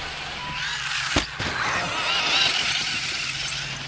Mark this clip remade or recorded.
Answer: recorded